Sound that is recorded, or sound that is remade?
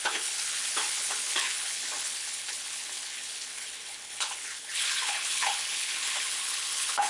remade